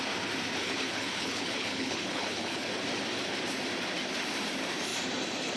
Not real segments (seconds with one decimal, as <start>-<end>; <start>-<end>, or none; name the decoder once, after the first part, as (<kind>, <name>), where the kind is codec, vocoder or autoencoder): 0.6-2.7 (codec, HILCodec)